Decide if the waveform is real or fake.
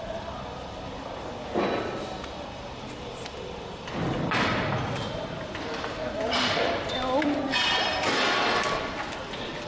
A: real